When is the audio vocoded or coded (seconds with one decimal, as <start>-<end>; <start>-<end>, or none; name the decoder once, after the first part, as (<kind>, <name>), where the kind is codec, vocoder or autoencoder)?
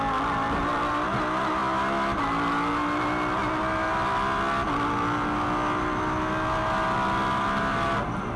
none